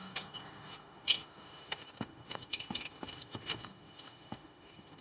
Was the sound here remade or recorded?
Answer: remade